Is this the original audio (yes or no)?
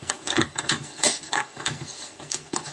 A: no